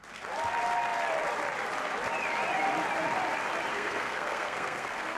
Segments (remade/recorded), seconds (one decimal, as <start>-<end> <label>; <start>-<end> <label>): 0.0-3.7 recorded; 3.7-5.2 remade